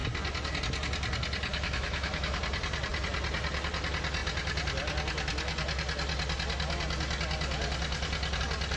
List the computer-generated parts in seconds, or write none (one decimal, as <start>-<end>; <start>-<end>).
1.5-2.4